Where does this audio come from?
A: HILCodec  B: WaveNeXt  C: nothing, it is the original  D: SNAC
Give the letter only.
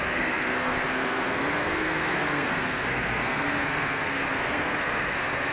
D